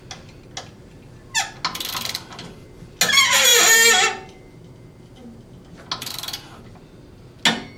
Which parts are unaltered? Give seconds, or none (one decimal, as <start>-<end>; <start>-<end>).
0.0-7.8